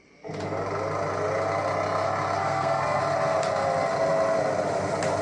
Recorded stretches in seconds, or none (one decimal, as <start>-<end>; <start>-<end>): 0.0-2.4; 3.0-5.2